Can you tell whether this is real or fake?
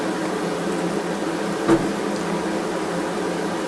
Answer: real